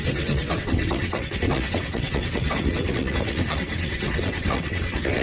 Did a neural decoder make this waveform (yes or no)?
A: yes